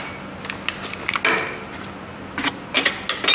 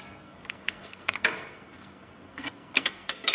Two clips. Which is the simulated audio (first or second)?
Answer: second